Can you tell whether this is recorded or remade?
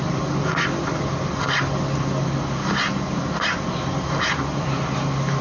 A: remade